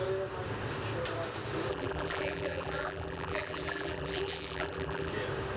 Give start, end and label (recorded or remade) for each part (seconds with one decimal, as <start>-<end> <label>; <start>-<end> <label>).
0.0-1.7 recorded; 1.7-5.1 remade; 5.1-5.6 recorded